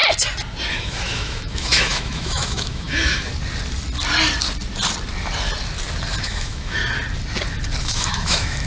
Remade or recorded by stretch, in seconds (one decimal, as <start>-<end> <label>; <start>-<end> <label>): 0.0-0.7 recorded; 0.7-3.3 remade; 3.3-6.2 recorded; 6.2-6.8 remade; 6.8-7.8 recorded; 7.8-8.7 remade